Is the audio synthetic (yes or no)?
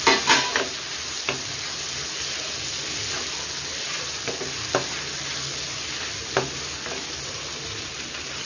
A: no